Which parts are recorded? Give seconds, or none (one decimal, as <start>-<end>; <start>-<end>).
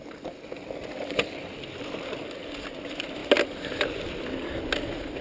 2.2-5.2